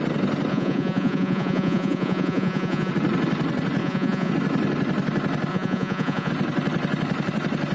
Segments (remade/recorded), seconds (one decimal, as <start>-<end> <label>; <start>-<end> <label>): 0.0-0.5 recorded; 0.5-2.9 remade; 2.9-3.8 recorded; 3.8-4.3 remade; 4.3-5.5 recorded; 5.5-6.3 remade; 6.3-7.7 recorded